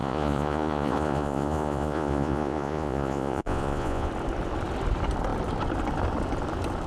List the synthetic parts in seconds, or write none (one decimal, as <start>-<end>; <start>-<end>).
0.0-4.1